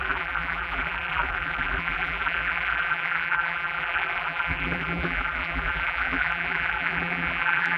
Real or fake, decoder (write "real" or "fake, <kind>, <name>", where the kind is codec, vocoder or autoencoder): fake, vocoder, BigVGAN v2